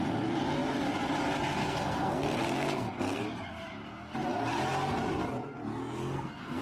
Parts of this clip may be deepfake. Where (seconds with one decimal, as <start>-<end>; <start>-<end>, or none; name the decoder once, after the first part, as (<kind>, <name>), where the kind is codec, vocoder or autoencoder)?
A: 1.6-3.2 (codec, SNAC); 5.8-6.6